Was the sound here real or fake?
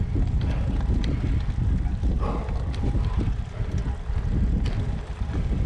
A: real